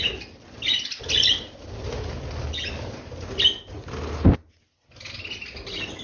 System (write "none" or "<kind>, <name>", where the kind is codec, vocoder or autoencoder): none